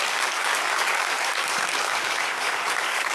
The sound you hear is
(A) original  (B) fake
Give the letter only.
B